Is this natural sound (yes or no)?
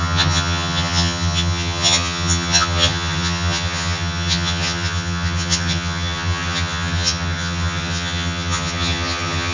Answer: no